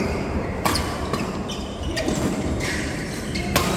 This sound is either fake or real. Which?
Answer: fake